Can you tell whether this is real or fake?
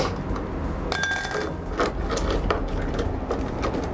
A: real